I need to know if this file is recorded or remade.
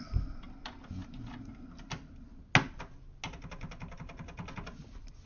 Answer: recorded